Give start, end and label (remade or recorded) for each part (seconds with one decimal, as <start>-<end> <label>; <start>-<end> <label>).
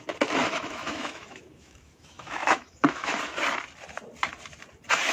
0.0-0.4 recorded; 0.4-3.2 remade; 3.2-5.1 recorded